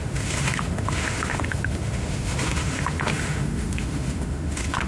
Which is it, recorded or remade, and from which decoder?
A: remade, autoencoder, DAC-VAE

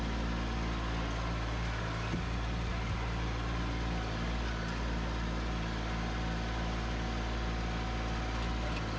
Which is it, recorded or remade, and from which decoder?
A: recorded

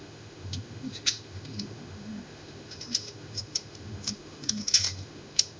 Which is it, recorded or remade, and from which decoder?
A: remade, autoencoder, DAC-VAE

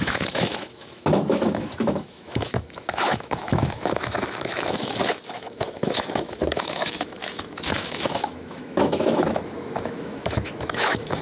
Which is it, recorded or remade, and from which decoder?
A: remade, autoencoder, DAC-VAE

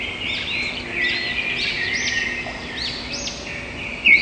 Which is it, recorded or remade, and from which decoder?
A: recorded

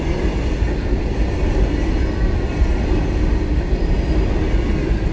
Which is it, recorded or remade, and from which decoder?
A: recorded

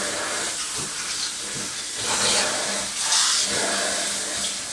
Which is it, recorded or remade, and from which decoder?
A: recorded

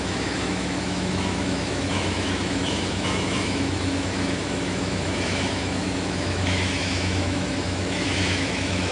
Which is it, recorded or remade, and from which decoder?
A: remade, autoencoder, DAC-VAE